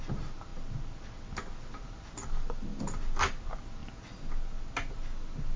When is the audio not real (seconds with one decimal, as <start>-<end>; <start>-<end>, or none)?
none